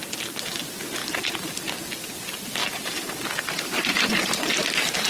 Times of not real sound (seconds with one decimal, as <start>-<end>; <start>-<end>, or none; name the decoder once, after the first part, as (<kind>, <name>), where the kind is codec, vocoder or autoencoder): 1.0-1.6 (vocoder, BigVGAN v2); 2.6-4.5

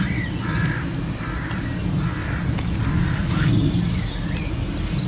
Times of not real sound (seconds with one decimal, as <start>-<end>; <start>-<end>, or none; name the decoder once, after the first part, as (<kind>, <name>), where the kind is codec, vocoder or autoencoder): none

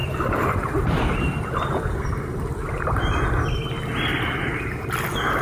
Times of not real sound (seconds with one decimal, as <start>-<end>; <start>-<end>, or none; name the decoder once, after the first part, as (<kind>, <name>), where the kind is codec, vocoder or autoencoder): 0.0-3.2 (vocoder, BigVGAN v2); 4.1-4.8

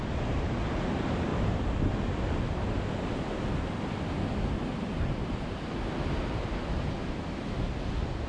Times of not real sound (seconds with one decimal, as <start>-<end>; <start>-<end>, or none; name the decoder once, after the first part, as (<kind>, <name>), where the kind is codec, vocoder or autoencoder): 7.0-7.6 (autoencoder, DAC-VAE)

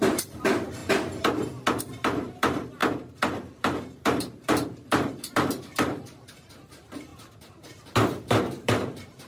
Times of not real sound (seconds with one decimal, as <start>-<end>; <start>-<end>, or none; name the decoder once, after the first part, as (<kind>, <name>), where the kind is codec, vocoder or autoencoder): 0.0-0.8 (vocoder, BigVGAN v2); 1.8-2.8; 3.4-7.1; 8.2-9.3